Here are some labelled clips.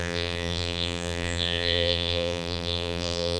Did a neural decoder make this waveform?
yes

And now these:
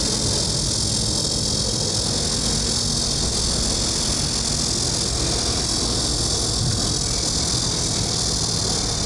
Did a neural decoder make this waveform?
no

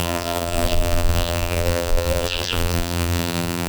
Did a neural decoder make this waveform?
yes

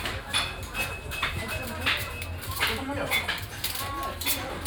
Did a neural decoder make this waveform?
no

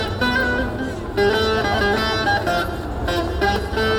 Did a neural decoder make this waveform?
no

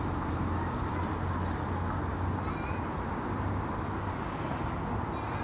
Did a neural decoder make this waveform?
no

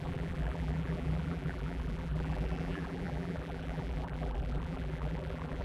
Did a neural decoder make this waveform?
yes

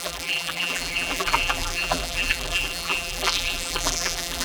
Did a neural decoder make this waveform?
yes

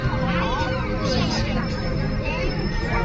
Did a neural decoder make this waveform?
yes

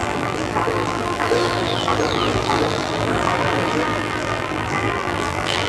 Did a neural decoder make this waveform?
yes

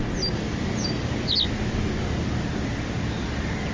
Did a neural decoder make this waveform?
no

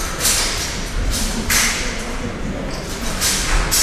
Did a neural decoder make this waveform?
yes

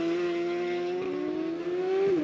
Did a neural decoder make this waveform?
no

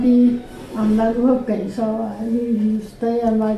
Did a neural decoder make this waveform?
no